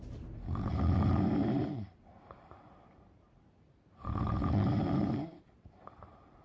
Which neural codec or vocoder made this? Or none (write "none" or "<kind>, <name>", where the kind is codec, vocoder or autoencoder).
vocoder, BigVGAN v2